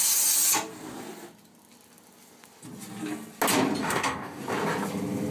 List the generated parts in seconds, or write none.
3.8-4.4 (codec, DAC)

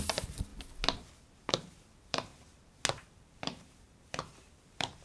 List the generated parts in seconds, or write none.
0.0-0.5 (vocoder, BigVGAN v2); 1.5-2.3; 3.0-5.0

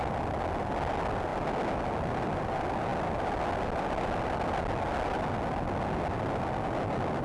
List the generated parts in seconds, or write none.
none